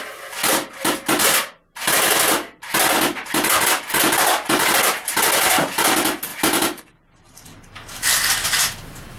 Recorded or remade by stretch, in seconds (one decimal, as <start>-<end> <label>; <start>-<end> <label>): 0.0-6.3 recorded; 6.3-6.8 remade; 6.8-9.2 recorded